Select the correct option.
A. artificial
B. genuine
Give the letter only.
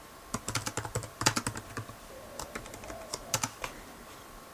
B